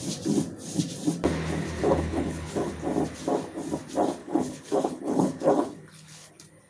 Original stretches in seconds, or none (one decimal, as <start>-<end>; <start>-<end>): 0.0-1.8; 2.7-4.2; 6.3-6.7